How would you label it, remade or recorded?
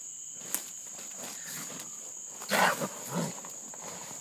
recorded